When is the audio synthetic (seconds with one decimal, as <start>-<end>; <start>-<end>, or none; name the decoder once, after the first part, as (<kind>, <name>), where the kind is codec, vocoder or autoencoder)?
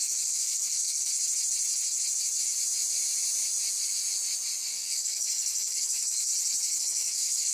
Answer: 0.0-1.1 (codec, SNAC); 4.7-6.3; 6.8-7.5